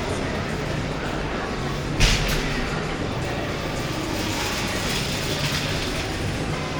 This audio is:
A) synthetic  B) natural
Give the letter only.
A